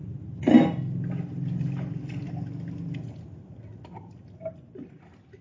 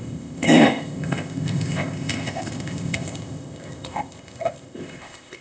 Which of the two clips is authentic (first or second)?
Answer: first